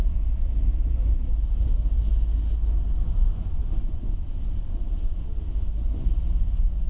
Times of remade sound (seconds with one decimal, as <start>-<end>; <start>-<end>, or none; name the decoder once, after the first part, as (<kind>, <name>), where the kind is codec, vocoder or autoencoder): 0.0-2.0 (vocoder, BigVGAN v2); 5.8-6.3